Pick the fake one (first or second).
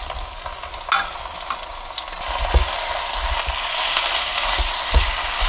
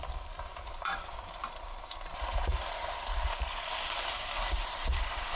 second